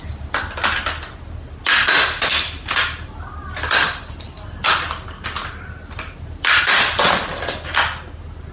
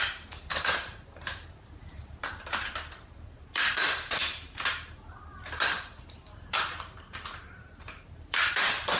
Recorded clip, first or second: first